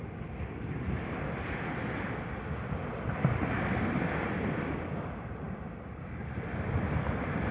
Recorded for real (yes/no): yes